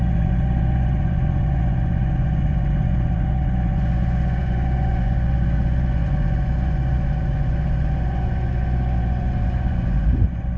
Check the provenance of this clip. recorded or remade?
remade